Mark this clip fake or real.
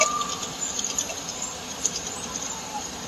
real